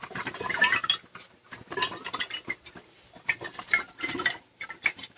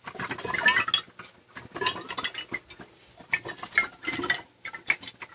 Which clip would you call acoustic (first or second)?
second